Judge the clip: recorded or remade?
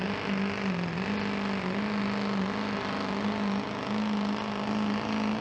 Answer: recorded